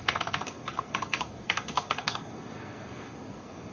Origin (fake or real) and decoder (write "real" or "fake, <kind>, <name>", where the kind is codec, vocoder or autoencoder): fake, codec, SNAC